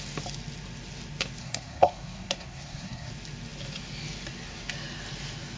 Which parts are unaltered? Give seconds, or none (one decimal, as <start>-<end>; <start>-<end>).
0.0-1.4; 3.1-5.6